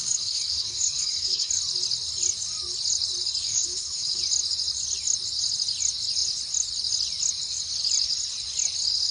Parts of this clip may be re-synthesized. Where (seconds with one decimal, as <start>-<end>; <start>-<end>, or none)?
0.0-1.5; 3.4-4.2